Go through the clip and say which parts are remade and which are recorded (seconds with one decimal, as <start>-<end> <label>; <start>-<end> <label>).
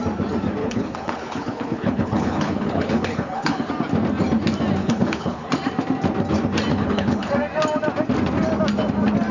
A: 0.0-0.6 recorded; 0.6-3.7 remade; 3.7-4.8 recorded; 4.8-5.5 remade; 5.5-6.7 recorded; 6.7-7.3 remade; 7.3-9.3 recorded